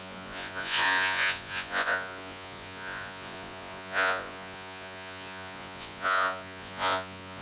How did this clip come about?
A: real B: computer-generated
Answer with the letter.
B